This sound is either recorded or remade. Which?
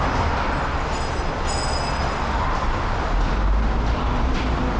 recorded